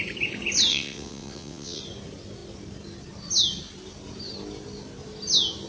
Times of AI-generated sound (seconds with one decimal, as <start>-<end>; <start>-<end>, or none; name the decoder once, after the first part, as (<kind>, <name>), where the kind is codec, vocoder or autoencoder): 0.7-1.8 (vocoder, WaveNeXt)